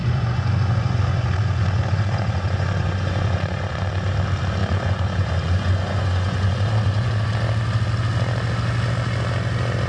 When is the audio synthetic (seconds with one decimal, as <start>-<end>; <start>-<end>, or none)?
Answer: 0.0-3.8; 4.6-7.3